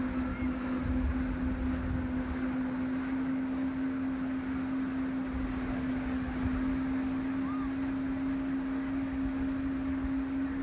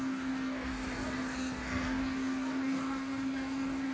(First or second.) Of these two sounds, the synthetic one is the second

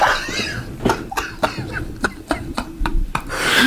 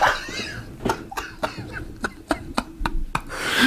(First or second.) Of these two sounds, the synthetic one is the first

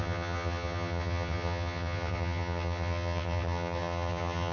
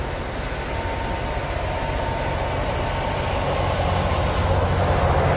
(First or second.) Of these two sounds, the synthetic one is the first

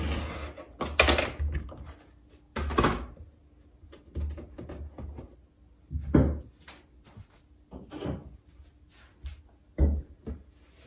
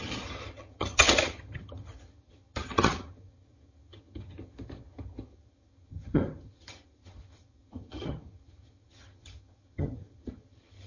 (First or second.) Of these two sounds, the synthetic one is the second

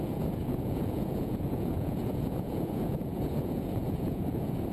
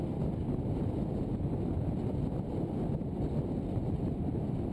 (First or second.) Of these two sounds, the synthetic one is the first